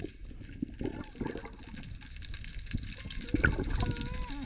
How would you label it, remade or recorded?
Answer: recorded